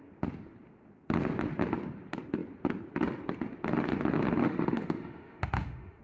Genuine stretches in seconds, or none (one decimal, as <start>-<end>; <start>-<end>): 0.0-4.4

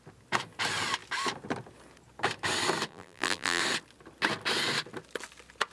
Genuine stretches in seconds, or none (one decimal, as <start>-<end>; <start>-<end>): 0.0-2.9; 3.6-5.7

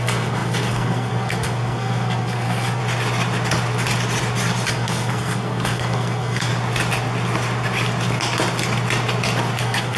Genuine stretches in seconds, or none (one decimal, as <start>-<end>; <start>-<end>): 2.8-4.7; 6.5-9.6

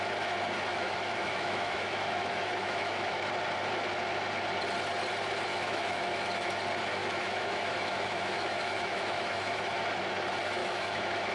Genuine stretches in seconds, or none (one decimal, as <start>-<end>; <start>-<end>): 0.0-0.7; 3.3-5.5; 6.5-7.0; 9.8-10.6